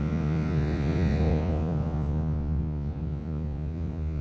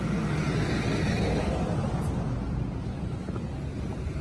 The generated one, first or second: first